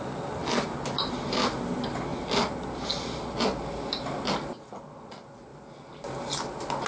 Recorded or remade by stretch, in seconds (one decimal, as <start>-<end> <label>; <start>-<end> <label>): 0.0-6.9 recorded